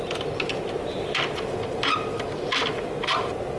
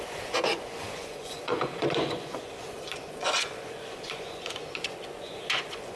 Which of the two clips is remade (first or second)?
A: second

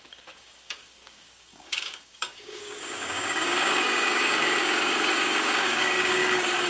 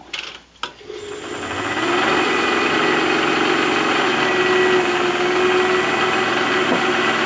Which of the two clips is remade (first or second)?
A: first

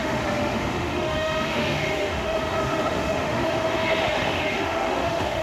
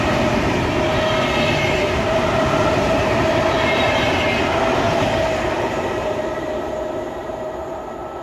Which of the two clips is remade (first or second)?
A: first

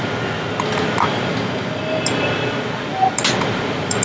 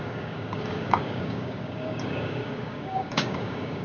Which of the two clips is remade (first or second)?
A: second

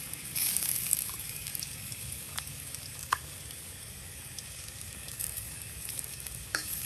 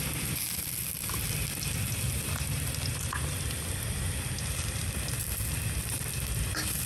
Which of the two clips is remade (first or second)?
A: first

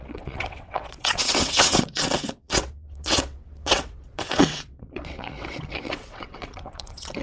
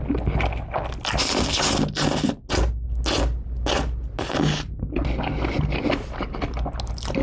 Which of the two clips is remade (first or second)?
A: first